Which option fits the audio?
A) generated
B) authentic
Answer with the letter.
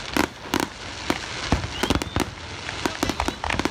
B